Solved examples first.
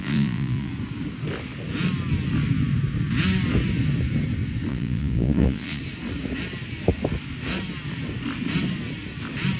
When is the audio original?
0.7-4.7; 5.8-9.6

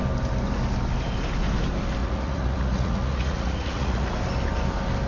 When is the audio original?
0.0-2.0; 4.1-5.1

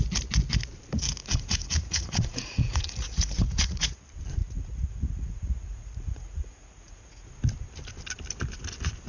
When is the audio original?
0.0-1.2; 4.0-4.4; 7.3-9.1

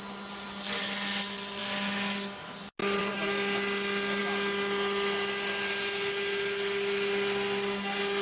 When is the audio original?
0.0-8.2

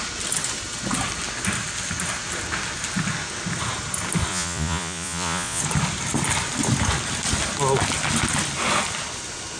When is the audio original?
0.0-4.3; 5.6-9.6

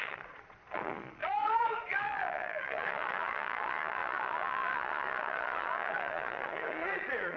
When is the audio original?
none

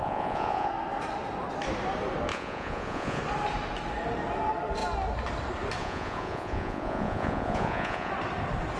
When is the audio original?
0.7-2.3; 3.2-5.8; 8.1-8.8

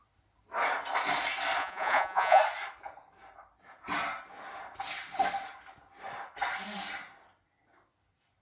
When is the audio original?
0.0-1.6; 2.4-8.4